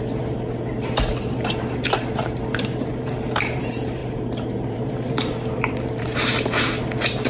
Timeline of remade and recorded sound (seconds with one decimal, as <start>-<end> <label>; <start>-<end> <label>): 0.0-7.3 remade